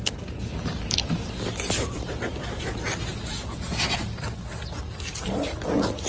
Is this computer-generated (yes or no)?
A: no